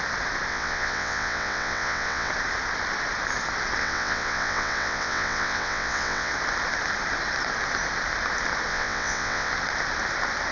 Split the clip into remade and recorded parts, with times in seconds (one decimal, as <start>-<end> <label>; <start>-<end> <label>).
0.0-0.5 recorded; 0.5-2.3 remade; 2.3-3.8 recorded; 3.8-6.3 remade; 6.3-8.7 recorded; 8.7-9.5 remade; 9.5-10.5 recorded